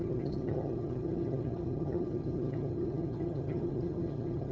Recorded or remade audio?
remade